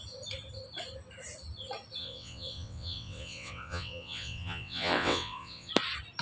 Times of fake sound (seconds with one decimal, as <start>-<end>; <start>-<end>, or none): 2.0-5.7

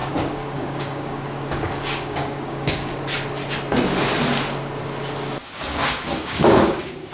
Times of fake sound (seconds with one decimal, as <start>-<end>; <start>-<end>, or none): 0.0-2.9; 5.4-7.1